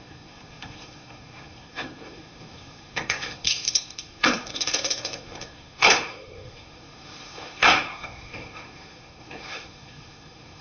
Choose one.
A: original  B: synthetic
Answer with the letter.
B